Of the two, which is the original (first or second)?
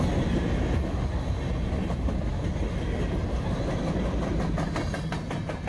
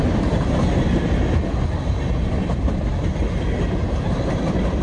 first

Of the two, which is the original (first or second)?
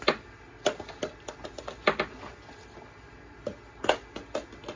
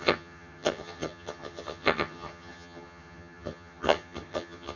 first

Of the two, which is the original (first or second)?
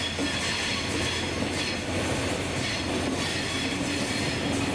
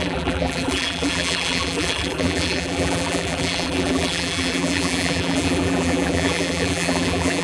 first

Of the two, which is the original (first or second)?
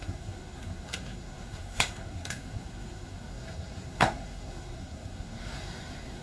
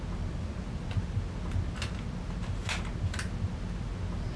second